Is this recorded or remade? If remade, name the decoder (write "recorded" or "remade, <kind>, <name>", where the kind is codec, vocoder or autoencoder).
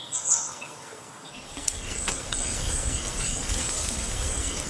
remade, codec, SNAC